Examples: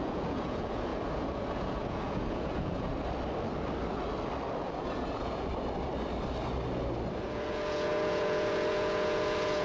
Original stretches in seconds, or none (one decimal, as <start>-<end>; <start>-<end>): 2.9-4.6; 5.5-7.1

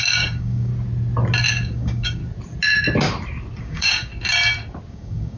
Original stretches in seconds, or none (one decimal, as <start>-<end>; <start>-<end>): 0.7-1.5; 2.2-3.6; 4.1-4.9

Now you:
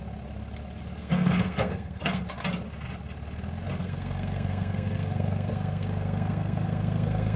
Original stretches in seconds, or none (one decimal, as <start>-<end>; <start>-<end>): 0.0-1.0; 2.2-3.8

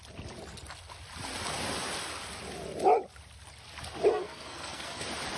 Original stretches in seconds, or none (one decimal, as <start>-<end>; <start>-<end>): 0.0-4.1; 5.0-5.4

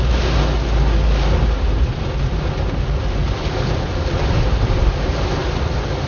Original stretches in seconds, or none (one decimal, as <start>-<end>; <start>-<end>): 0.0-3.2; 4.7-5.4

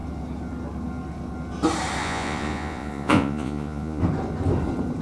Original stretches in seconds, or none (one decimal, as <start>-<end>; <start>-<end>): 0.0-2.0; 4.0-5.0